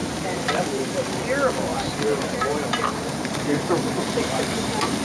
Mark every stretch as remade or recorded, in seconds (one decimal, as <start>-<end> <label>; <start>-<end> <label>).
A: 0.0-1.1 remade; 1.1-1.7 recorded; 1.7-5.0 remade